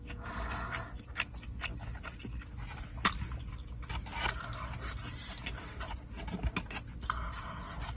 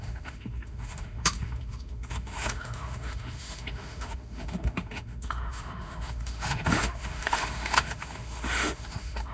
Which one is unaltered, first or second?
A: first